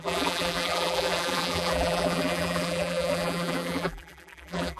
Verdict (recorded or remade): remade